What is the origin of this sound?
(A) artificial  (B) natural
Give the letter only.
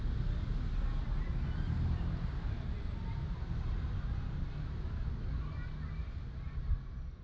B